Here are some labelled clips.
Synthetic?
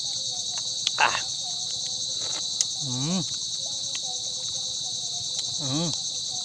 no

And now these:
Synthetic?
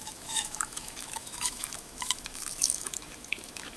yes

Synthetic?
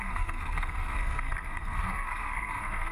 yes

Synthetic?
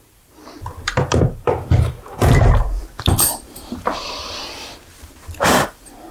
yes